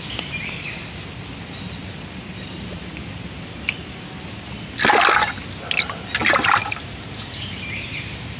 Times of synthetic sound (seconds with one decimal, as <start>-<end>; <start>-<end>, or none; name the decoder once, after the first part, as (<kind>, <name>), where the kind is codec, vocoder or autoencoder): 6.2-7.6 (vocoder, BigVGAN v2)